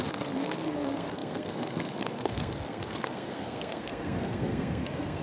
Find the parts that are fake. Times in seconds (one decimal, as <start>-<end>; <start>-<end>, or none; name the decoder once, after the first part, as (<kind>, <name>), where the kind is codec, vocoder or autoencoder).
0.0-5.2 (codec, SNAC)

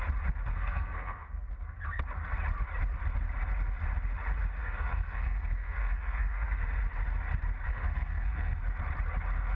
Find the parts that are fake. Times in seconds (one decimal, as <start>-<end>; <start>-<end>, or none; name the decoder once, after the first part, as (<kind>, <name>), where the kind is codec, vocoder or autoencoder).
0.5-1.5 (codec, SNAC); 4.6-6.6; 7.7-8.6

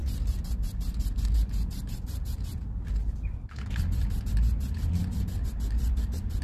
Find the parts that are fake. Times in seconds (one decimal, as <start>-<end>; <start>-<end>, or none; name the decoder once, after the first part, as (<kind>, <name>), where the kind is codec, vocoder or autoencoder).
none

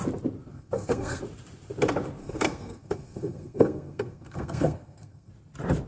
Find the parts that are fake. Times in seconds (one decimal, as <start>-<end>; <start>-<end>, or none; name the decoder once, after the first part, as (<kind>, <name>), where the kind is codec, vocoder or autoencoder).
0.5-1.2 (codec, SNAC); 2.2-5.3

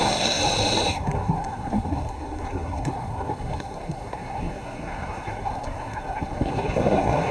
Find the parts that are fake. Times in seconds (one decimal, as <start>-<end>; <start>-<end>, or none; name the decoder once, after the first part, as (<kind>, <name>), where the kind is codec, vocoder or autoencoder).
0.0-0.4 (codec, SNAC); 0.9-7.3